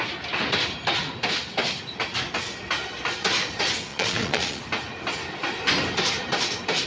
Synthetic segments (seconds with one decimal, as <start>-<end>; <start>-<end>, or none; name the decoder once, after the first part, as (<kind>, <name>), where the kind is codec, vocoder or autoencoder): 3.9-4.6 (vocoder, Vocos)